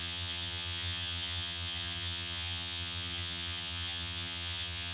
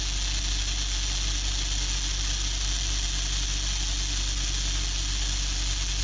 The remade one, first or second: first